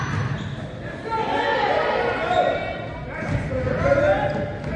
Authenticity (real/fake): real